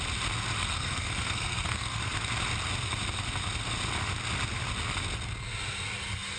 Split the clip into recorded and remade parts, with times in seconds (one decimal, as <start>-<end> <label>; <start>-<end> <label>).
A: 0.0-0.6 recorded; 0.6-2.0 remade; 2.0-6.4 recorded